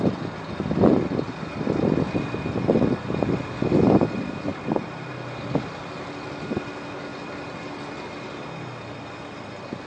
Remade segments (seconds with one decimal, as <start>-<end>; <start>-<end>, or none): none